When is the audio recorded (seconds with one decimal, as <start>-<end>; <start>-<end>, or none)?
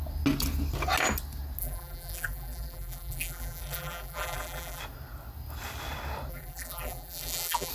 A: 0.0-1.6; 4.8-6.3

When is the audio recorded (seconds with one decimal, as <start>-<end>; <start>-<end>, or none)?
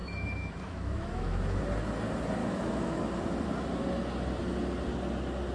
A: 1.6-2.4; 3.0-5.5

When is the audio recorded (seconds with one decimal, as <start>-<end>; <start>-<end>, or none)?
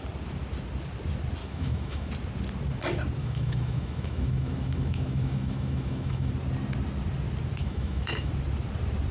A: 0.0-1.4; 2.1-3.2; 6.3-7.6; 8.3-9.1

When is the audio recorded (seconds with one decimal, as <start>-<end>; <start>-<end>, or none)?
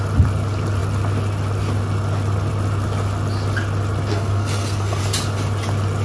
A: 0.0-4.1; 5.0-6.0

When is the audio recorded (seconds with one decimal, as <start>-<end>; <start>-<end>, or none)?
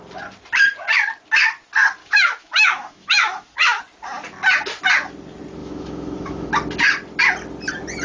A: 0.0-2.0; 3.8-5.6; 6.5-8.0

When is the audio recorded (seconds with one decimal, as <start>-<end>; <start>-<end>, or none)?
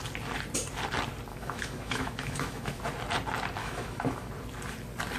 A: 0.0-1.3; 2.8-3.6; 4.3-5.2